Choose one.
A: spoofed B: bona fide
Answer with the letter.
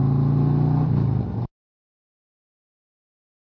B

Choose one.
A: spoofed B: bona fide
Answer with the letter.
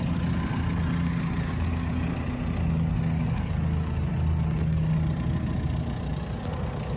B